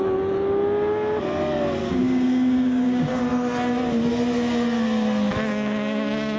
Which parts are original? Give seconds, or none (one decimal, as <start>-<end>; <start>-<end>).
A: 0.0-1.8; 3.2-5.5